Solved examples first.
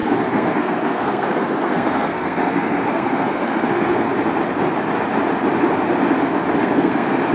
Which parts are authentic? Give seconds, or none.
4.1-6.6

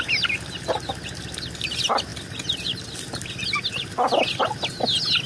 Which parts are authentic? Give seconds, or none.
0.0-5.3

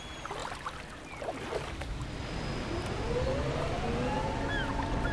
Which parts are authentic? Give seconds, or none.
0.0-5.1

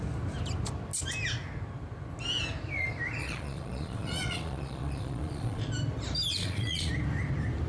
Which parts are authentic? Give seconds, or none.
0.0-3.2; 5.6-6.3; 6.9-7.7

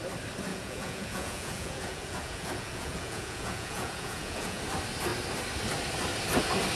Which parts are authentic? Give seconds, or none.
0.0-0.5; 4.6-6.8

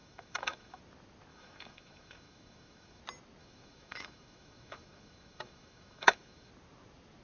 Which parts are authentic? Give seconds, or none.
0.8-1.3; 3.0-3.4; 6.5-7.2

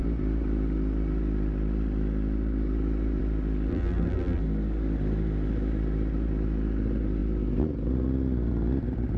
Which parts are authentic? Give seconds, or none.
0.0-3.7; 4.4-9.2